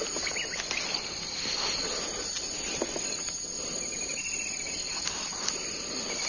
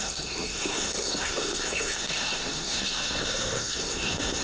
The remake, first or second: second